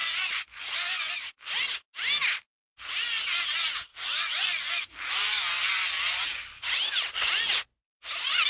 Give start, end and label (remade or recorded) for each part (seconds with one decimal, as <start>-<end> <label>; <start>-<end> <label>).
0.0-1.1 remade; 1.1-3.9 recorded; 3.9-4.7 remade; 4.7-8.5 recorded